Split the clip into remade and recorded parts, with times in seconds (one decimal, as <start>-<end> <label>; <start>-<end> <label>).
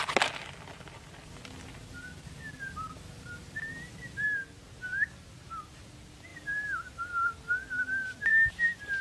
0.0-9.0 recorded